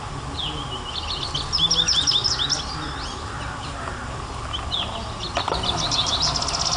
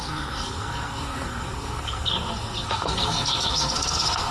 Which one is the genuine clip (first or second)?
first